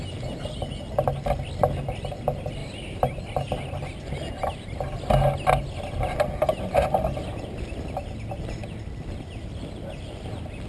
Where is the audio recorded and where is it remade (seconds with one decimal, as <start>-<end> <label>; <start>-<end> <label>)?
0.0-2.6 recorded; 2.6-3.2 remade; 3.2-10.7 recorded